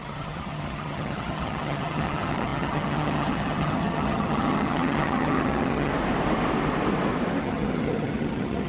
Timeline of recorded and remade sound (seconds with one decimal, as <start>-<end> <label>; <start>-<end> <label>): 0.0-5.9 remade; 5.9-7.4 recorded; 7.4-8.7 remade